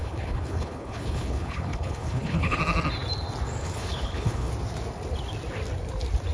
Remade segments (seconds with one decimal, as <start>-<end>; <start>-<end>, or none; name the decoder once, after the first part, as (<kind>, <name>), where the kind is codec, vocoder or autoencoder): 0.0-2.6 (codec, HILCodec); 3.6-4.5